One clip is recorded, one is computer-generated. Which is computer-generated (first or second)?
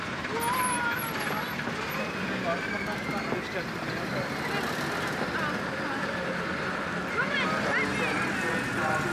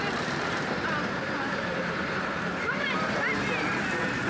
second